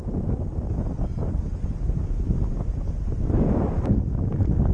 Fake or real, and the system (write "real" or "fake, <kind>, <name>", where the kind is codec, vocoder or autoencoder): real